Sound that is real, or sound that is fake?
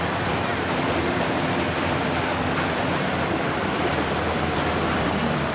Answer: fake